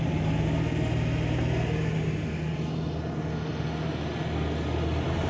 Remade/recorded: recorded